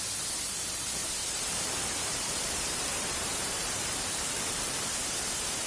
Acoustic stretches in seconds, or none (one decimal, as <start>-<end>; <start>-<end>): 0.0-1.0; 4.4-5.7